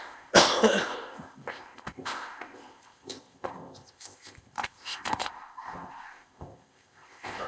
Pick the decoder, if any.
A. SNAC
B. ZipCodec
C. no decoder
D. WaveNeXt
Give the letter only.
B